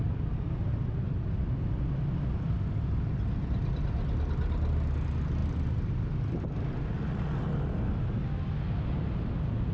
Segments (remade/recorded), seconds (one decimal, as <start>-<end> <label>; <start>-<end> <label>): 0.0-9.7 recorded